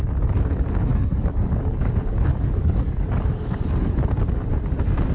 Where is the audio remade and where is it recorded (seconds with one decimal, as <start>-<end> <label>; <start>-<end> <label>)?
0.0-0.9 recorded; 0.9-4.0 remade; 4.0-5.1 recorded